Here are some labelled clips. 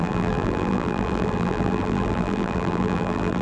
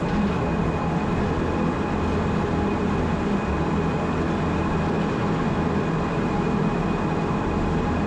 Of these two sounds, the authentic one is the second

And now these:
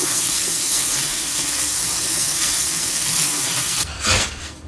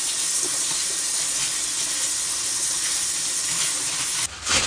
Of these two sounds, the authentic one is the second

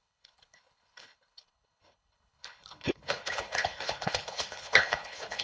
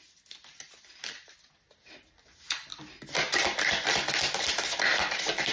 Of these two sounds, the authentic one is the second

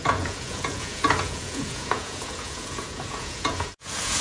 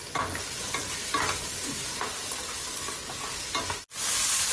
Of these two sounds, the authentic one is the second